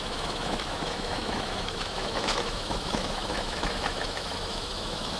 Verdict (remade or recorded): remade